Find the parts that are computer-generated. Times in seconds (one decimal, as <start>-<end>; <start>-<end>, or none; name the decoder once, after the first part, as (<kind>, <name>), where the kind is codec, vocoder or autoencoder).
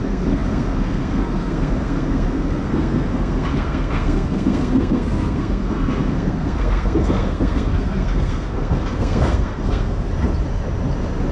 0.0-10.1 (codec, SNAC)